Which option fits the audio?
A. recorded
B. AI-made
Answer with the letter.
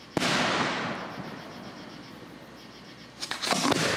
A